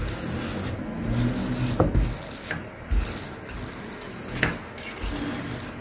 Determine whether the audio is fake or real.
real